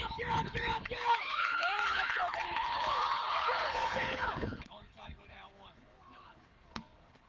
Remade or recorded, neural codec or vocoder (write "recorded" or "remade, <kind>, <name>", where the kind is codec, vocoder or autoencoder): remade, codec, HILCodec